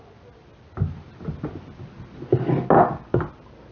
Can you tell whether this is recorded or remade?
recorded